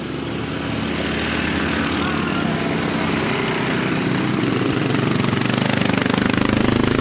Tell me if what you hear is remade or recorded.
recorded